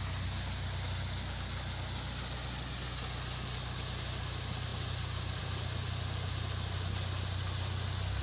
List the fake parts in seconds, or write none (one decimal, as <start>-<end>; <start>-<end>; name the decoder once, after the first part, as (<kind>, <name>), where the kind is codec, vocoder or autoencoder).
none